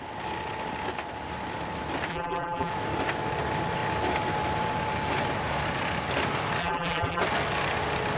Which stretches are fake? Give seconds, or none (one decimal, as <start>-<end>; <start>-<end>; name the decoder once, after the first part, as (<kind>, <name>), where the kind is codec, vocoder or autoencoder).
2.1-2.7 (vocoder, BigVGAN v2); 6.6-7.2